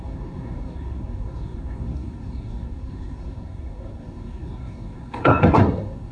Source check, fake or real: fake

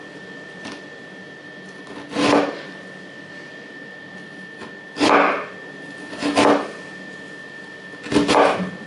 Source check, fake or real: real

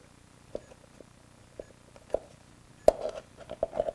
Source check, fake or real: real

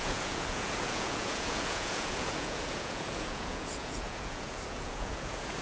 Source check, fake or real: fake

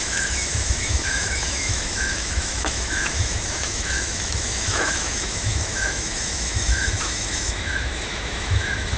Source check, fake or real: fake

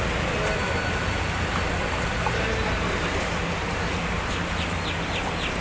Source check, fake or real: real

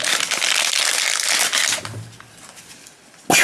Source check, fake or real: real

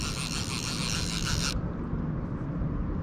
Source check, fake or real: real